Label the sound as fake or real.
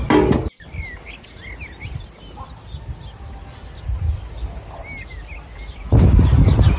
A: real